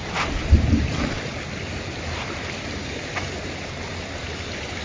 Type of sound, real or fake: real